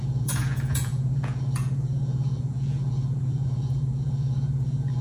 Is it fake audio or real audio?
fake